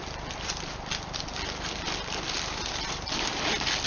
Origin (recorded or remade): recorded